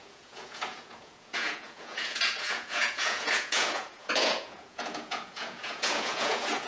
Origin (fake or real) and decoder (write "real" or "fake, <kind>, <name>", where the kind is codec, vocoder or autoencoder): fake, vocoder, Vocos